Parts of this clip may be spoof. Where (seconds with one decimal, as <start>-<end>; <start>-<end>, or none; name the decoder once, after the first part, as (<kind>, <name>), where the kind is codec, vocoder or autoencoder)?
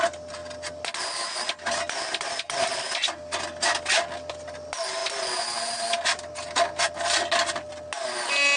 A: none